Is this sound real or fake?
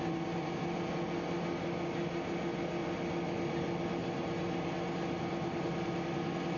real